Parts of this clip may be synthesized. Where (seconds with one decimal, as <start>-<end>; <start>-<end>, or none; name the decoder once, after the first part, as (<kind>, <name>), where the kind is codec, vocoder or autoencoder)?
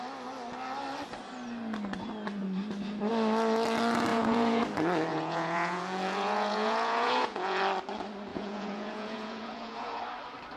4.1-4.6 (vocoder, Vocos); 5.1-7.6; 8.3-10.0